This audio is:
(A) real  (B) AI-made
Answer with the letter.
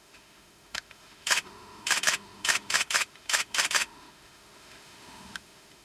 B